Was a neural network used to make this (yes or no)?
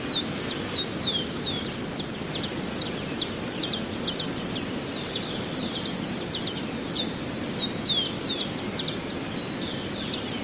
no